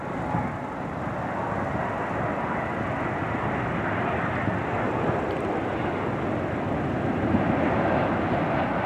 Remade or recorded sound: recorded